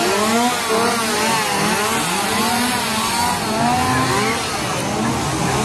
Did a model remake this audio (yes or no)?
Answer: no